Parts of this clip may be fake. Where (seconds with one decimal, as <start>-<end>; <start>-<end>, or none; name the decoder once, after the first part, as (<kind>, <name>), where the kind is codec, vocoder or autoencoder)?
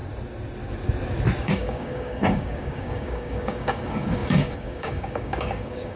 1.4-6.0 (codec, DAC)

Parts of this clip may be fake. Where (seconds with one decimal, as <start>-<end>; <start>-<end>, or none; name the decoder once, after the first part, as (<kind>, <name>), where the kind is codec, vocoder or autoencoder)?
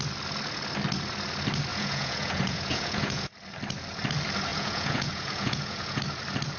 1.7-3.3 (vocoder, Vocos); 4.5-6.0